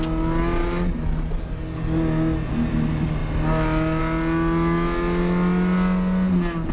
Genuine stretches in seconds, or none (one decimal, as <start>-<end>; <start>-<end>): 0.0-6.7